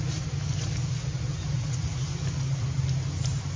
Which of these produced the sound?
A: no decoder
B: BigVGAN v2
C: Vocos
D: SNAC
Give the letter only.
A